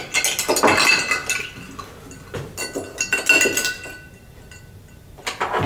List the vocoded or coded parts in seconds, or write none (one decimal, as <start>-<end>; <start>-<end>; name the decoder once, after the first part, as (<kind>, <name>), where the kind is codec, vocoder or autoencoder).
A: none